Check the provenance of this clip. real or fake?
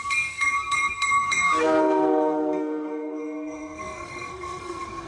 fake